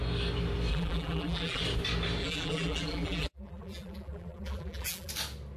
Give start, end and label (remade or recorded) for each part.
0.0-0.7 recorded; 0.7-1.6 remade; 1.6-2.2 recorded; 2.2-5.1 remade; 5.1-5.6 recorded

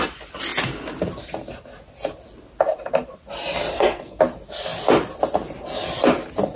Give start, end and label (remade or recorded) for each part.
0.0-3.7 recorded; 3.7-4.2 remade; 4.2-6.6 recorded

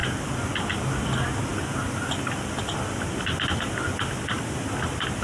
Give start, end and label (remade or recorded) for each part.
0.0-5.2 recorded

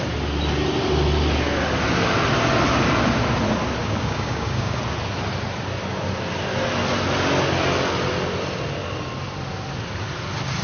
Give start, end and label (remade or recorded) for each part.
0.0-3.8 recorded; 3.8-4.8 remade; 4.8-10.6 recorded

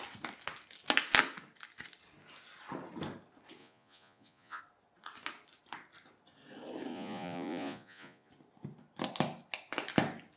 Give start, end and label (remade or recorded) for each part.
0.0-3.6 recorded; 3.6-4.6 remade; 4.6-6.9 recorded; 6.9-8.3 remade; 8.3-10.4 recorded

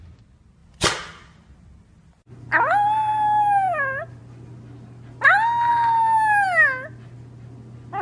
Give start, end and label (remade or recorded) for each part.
0.0-8.0 recorded

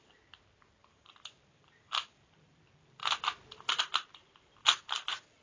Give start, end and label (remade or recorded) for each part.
0.0-0.8 recorded; 0.8-2.6 remade; 2.6-5.4 recorded